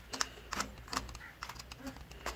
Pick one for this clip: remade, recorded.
recorded